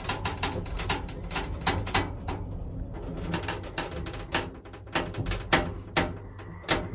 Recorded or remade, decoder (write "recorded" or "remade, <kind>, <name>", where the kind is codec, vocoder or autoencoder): recorded